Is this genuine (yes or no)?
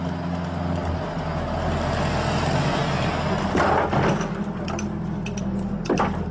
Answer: yes